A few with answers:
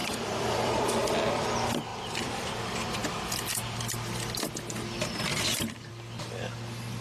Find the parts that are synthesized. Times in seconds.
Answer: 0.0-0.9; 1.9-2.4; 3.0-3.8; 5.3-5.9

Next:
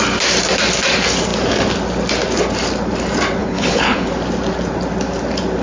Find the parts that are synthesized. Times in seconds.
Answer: 3.4-4.1

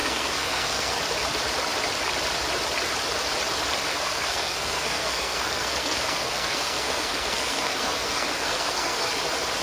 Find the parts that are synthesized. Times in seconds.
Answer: 0.0-1.0; 3.9-9.1

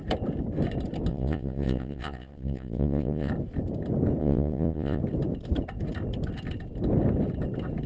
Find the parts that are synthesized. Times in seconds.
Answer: 1.1-3.3; 4.2-5.0

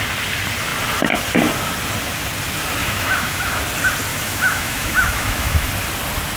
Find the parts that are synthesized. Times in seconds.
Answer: 2.8-3.6; 4.1-5.7

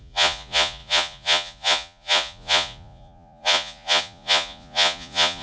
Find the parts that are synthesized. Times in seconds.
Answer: 0.0-5.4

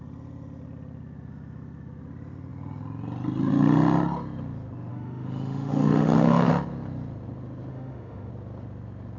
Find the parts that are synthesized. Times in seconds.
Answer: 4.9-6.5; 7.7-8.3